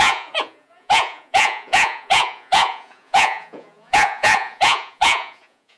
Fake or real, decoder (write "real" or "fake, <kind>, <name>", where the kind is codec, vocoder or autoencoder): fake, vocoder, Vocos